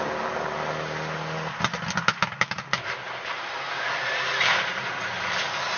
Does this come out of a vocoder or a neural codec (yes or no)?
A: no